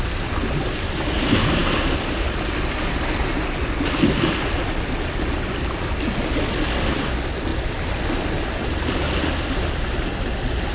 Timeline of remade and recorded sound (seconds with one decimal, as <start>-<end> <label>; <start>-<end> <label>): 0.0-10.7 recorded

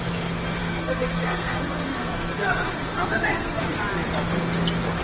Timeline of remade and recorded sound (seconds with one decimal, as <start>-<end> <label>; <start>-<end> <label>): 0.0-0.6 recorded; 0.6-3.6 remade; 3.6-5.0 recorded

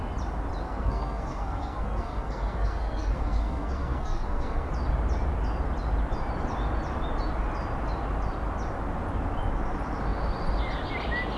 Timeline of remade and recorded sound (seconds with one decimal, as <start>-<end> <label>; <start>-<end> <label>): 0.0-0.6 recorded; 0.6-4.7 remade; 4.7-11.4 recorded

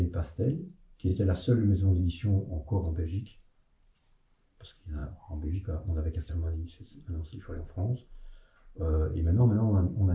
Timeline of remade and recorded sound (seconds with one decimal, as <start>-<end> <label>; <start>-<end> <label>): 0.0-1.1 recorded; 1.1-2.1 remade; 2.1-10.1 recorded